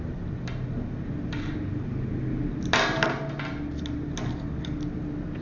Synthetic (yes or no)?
no